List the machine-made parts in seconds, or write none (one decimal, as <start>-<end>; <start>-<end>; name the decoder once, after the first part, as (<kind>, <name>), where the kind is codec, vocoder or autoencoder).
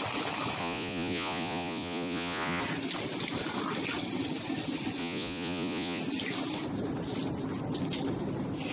0.6-2.6 (vocoder, Vocos); 5.0-6.0